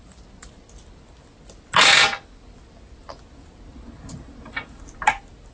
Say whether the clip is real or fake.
real